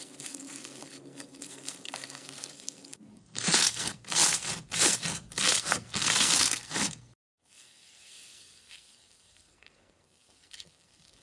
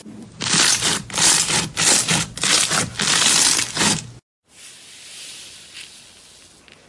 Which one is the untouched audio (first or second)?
second